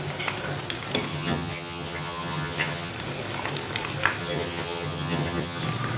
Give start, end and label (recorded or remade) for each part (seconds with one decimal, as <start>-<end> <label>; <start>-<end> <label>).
0.0-1.1 recorded; 1.1-2.9 remade; 2.9-4.2 recorded; 4.2-5.6 remade; 5.6-6.0 recorded